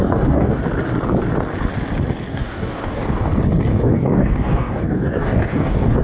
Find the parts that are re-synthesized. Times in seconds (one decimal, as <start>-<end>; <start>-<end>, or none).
0.0-0.6; 2.3-3.3; 3.7-6.0